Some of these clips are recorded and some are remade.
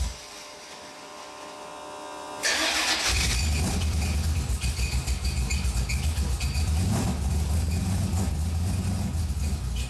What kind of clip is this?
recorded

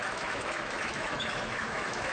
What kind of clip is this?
remade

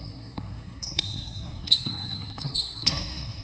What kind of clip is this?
remade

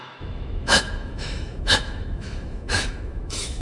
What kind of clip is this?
remade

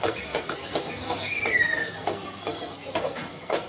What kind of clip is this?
remade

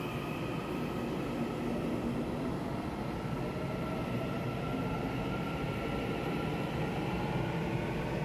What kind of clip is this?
recorded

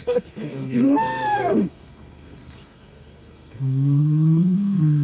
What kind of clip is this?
remade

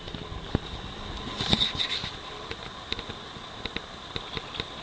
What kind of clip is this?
recorded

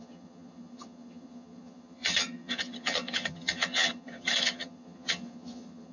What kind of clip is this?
remade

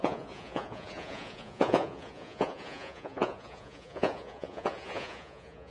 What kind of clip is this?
remade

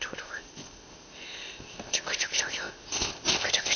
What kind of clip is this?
remade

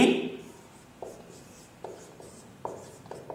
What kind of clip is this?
recorded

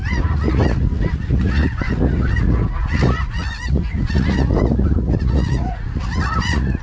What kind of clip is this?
remade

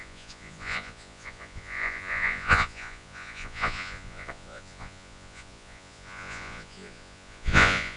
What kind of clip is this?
remade